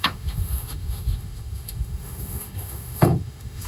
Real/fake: fake